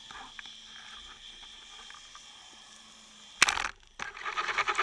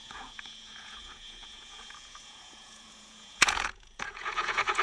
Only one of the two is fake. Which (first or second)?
second